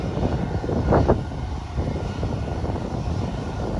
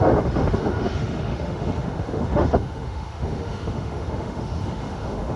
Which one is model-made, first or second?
second